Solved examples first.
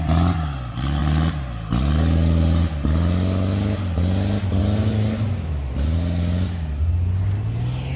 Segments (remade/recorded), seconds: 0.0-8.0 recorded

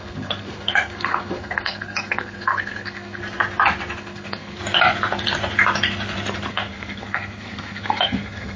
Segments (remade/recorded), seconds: 0.0-3.2 remade; 3.2-4.0 recorded; 4.0-4.6 remade; 4.6-6.5 recorded; 6.5-8.6 remade

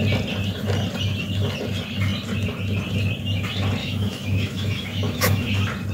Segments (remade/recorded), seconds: 0.0-3.8 recorded; 3.8-5.5 remade; 5.5-5.9 recorded

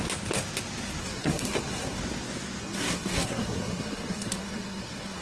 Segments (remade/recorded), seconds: 0.0-1.0 recorded; 1.0-2.0 remade; 2.0-2.6 recorded; 2.6-5.2 remade

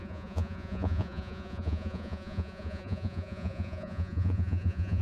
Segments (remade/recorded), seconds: 0.0-5.0 remade

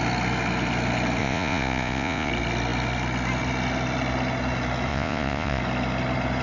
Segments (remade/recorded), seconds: 0.0-1.2 recorded; 1.2-2.3 remade; 2.3-4.9 recorded; 4.9-5.6 remade; 5.6-6.4 recorded